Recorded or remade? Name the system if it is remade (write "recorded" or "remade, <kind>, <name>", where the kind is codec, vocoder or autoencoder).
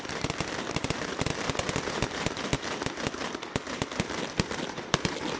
remade, vocoder, BigVGAN v2